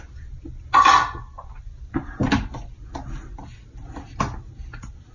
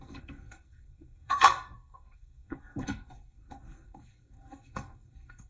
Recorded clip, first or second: first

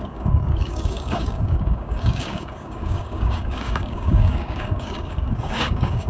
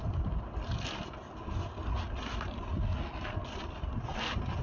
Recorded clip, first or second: second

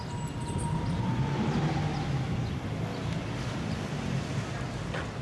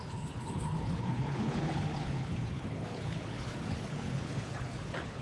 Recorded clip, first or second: first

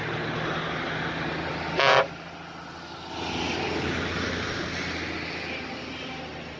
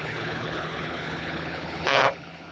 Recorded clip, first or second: first